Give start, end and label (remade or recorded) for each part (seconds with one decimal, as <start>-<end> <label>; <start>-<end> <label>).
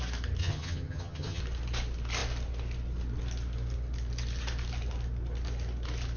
0.0-0.4 recorded; 0.4-1.4 remade; 1.4-6.2 recorded